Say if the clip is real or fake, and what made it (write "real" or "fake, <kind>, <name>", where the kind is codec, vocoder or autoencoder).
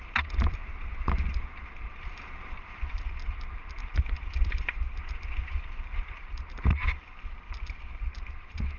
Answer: real